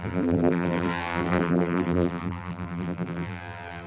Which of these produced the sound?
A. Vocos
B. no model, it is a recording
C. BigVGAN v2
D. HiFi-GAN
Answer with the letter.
C